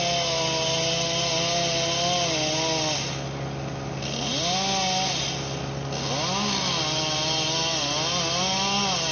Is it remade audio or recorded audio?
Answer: recorded